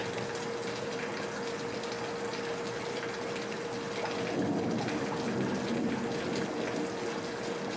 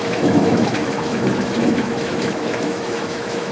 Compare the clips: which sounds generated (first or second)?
second